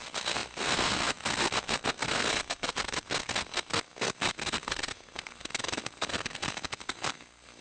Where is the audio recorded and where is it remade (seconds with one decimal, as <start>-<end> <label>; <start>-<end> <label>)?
0.0-7.6 remade